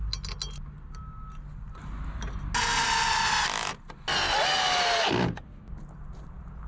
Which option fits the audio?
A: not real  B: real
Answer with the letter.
B